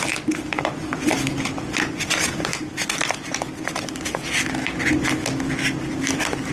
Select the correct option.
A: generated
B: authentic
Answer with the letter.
B